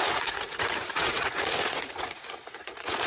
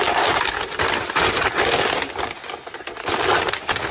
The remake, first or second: first